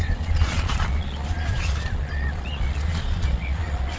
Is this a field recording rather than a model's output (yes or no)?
no